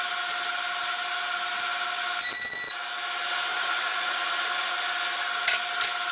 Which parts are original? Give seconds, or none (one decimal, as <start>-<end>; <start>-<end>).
0.0-3.5; 4.7-6.1